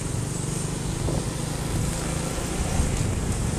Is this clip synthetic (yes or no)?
no